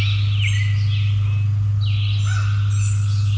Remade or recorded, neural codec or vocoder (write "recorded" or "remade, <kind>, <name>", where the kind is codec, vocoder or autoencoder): recorded